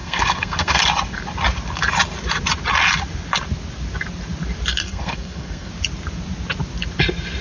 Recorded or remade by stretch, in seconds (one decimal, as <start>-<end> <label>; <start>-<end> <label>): 0.0-0.8 remade; 0.8-4.8 recorded; 4.8-5.7 remade; 5.7-7.4 recorded